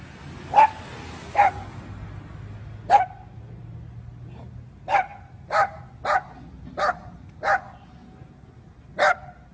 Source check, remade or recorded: recorded